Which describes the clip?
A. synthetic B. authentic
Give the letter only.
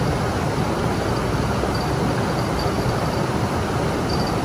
B